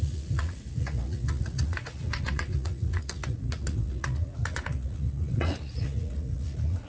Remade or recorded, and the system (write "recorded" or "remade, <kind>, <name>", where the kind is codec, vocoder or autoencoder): remade, vocoder, Vocos